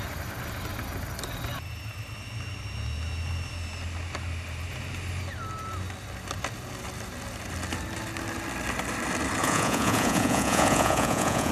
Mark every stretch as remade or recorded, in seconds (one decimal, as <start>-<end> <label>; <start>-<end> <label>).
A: 0.0-9.4 recorded; 9.4-11.5 remade